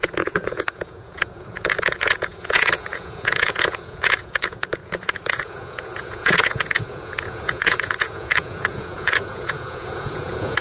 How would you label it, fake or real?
fake